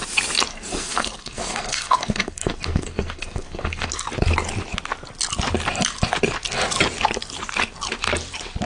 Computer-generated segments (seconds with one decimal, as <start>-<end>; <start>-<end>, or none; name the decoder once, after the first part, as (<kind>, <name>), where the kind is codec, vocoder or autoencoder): 0.5-3.9 (codec, SNAC)